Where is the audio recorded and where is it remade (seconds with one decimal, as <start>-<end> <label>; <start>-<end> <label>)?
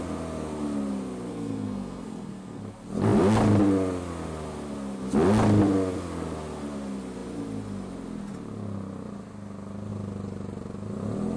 0.0-1.3 recorded; 1.3-2.6 remade; 2.6-11.4 recorded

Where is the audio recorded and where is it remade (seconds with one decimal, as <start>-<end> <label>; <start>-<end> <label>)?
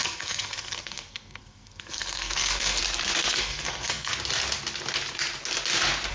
0.0-2.8 remade; 2.8-3.4 recorded; 3.4-4.1 remade; 4.1-6.1 recorded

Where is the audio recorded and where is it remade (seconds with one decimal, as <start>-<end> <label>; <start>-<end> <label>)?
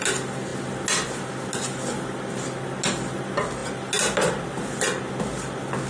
0.0-5.9 recorded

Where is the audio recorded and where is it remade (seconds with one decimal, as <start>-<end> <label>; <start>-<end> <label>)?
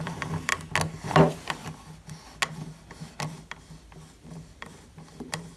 0.0-0.5 remade; 0.5-1.1 recorded; 1.1-1.6 remade; 1.6-4.2 recorded; 4.2-5.6 remade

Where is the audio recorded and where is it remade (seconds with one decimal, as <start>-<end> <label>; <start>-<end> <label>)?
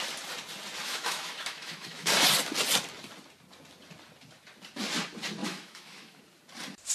0.0-0.8 recorded; 0.8-2.1 remade; 2.1-5.4 recorded; 5.4-6.2 remade; 6.2-6.9 recorded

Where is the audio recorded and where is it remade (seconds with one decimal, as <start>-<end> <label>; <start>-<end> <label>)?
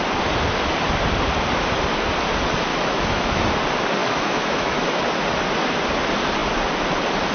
0.0-2.7 recorded; 2.7-3.4 remade; 3.4-4.0 recorded; 4.0-5.0 remade; 5.0-7.3 recorded